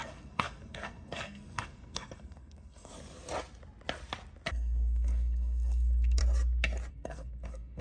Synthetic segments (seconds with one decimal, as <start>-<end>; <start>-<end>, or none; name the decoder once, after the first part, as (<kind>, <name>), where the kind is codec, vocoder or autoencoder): 0.0-2.9 (codec, SNAC); 4.5-6.2; 6.9-7.8